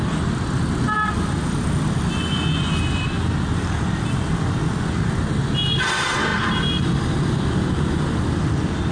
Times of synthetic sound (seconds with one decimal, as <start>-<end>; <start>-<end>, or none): none